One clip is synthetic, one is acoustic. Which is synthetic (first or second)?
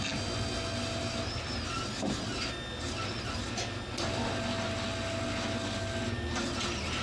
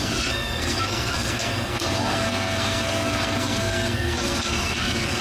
second